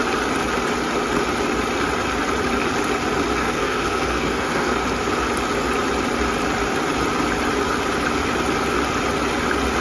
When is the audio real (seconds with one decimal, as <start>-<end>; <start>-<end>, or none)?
0.0-3.4; 4.8-9.8